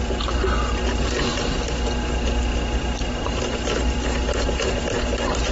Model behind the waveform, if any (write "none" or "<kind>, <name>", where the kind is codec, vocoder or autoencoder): none